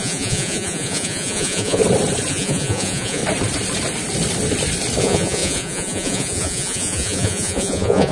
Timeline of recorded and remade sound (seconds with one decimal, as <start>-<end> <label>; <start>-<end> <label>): 0.0-1.8 remade; 1.8-2.3 recorded; 2.3-3.2 remade; 3.2-5.0 recorded; 5.0-8.1 remade